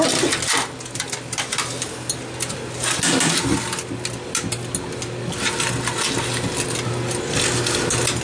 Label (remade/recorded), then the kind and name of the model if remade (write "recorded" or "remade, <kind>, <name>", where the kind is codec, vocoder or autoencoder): recorded